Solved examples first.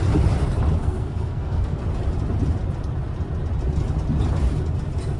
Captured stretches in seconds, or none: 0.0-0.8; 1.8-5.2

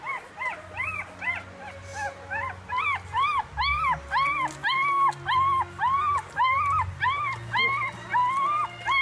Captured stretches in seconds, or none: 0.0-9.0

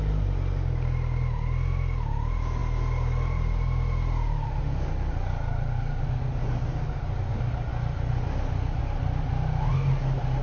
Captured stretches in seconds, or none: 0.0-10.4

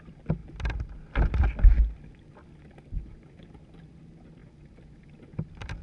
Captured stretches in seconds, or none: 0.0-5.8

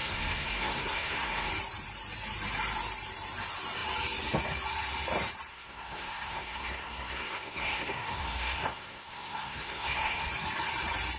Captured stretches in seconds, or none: 1.5-5.5; 10.3-11.2

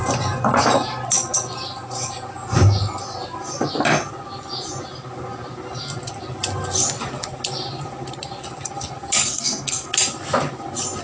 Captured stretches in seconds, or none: 0.0-9.2; 9.9-11.0